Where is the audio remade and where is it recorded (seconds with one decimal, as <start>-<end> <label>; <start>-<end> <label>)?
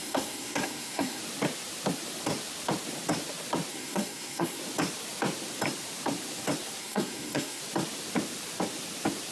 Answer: 0.0-1.2 remade; 1.2-3.7 recorded; 3.7-4.6 remade; 4.6-6.8 recorded; 6.8-7.6 remade; 7.6-9.3 recorded